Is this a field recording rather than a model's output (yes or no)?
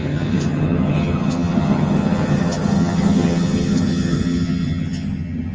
no